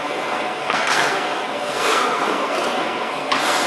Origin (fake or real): fake